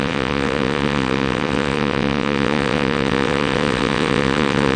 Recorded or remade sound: remade